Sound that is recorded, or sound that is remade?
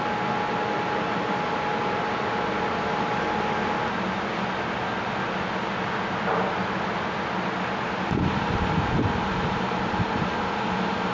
recorded